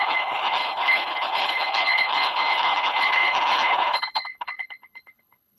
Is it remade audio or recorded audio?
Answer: remade